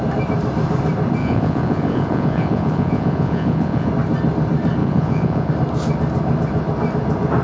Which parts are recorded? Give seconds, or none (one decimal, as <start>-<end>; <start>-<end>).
0.0-1.2; 3.9-4.8; 5.5-7.4